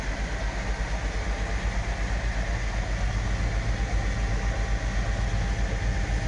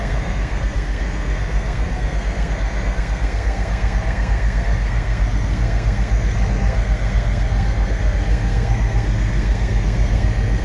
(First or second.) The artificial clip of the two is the second